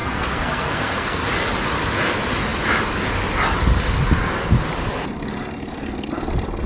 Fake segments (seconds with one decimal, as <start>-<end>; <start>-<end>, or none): 0.0-1.2